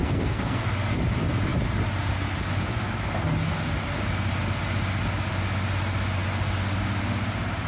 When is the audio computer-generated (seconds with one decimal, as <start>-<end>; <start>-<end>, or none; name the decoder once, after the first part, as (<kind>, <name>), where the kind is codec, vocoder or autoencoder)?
0.0-0.6 (codec, SNAC)